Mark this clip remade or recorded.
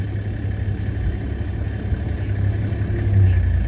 recorded